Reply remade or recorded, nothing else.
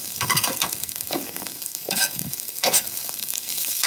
remade